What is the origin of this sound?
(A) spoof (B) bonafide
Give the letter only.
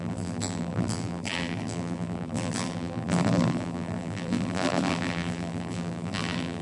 A